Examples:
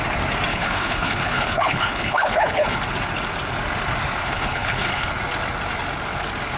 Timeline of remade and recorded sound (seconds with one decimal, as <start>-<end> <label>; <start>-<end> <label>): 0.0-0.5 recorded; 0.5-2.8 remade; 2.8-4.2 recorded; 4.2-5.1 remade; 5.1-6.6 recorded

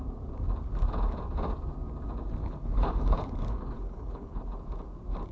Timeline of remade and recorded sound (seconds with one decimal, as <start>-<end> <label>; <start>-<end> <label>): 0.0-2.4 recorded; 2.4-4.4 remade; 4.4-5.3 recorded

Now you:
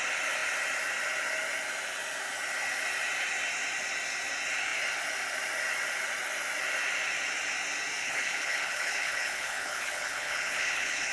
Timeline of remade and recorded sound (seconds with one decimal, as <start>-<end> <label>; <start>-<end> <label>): 0.0-8.0 recorded; 8.0-11.1 remade

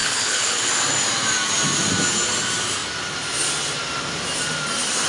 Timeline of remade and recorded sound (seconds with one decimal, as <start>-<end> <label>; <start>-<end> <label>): 0.0-0.7 remade; 0.7-5.1 recorded